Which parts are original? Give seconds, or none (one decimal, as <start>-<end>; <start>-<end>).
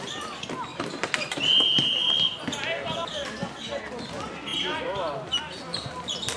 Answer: 0.0-0.7; 2.1-6.4